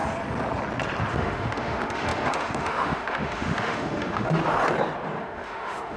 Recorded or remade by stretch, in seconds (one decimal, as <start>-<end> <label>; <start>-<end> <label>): 0.0-1.1 recorded; 1.1-4.4 remade; 4.4-5.2 recorded; 5.2-6.0 remade